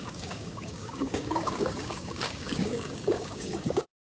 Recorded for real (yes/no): no